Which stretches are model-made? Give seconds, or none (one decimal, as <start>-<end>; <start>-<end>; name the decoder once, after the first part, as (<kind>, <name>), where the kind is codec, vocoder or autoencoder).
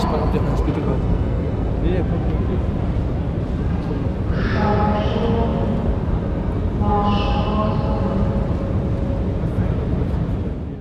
0.5-1.7 (codec, SNAC)